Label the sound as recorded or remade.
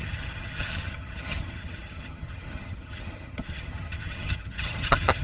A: remade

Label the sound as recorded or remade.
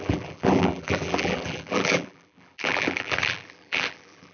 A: remade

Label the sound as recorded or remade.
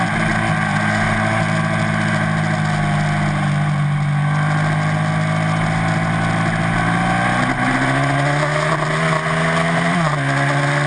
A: recorded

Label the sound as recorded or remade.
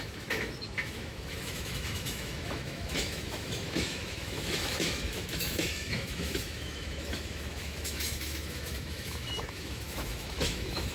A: remade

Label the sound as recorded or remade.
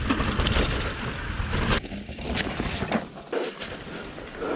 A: recorded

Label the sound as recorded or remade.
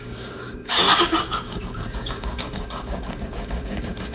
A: remade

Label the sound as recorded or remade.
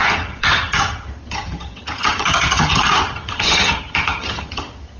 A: remade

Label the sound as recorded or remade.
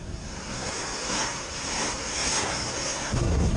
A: remade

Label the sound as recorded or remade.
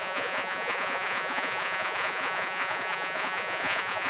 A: remade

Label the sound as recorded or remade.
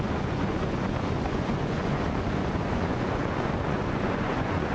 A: remade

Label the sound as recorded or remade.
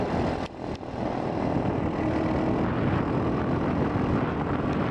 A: recorded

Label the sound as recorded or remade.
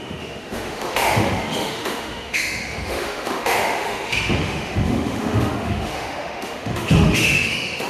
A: remade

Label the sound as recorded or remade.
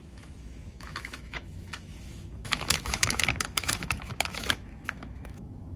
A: remade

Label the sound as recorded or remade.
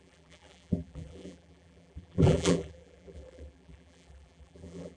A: remade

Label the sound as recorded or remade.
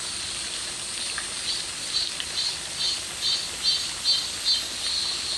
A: recorded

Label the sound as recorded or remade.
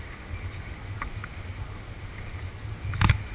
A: recorded